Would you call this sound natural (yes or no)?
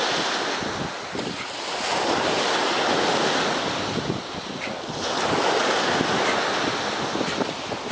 yes